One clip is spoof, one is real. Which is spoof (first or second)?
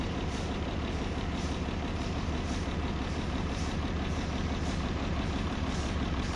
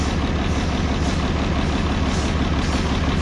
first